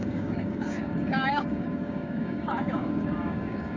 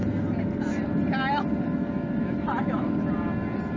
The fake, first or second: first